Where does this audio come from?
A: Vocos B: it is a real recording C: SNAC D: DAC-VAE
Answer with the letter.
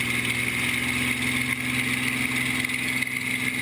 B